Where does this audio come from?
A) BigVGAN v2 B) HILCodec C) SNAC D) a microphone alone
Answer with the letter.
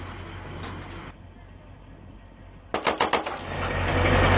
D